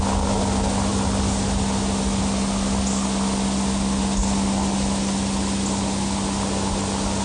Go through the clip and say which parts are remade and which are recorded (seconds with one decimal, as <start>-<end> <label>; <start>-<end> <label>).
0.0-7.2 recorded